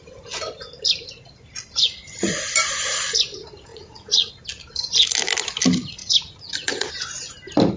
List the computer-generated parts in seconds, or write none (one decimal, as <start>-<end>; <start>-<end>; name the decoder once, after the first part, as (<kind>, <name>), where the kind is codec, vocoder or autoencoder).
3.7-4.3 (vocoder, Vocos); 6.0-6.9

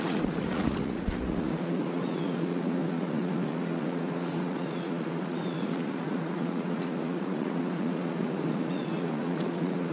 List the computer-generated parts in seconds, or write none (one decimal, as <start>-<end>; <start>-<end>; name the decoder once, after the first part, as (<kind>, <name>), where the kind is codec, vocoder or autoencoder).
0.0-9.9 (vocoder, Vocos)

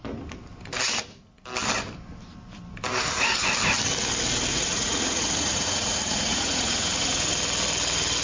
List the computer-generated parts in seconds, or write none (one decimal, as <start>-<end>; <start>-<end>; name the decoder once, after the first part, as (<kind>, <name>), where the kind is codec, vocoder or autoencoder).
4.5-7.3 (vocoder, Vocos)

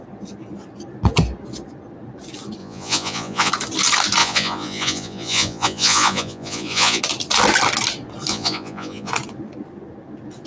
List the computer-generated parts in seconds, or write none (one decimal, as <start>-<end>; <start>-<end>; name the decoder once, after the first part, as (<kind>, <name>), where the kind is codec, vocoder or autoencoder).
2.6-3.5 (vocoder, Vocos); 4.2-7.0; 8.3-9.1

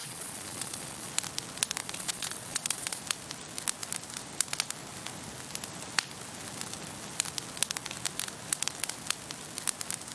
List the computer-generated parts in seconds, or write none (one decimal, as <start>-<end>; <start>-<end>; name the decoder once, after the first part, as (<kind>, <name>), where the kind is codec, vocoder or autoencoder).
0.0-1.1 (vocoder, Vocos); 1.8-3.0